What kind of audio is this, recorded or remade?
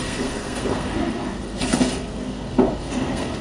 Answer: remade